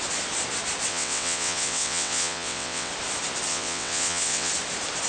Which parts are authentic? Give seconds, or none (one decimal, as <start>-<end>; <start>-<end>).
0.0-0.9; 2.9-3.5; 4.5-5.1